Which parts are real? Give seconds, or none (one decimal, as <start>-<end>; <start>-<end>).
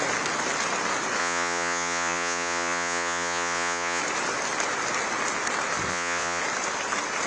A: 0.0-1.2; 4.0-5.9; 6.4-7.3